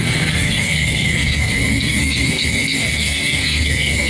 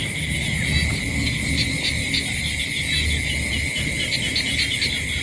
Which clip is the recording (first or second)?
second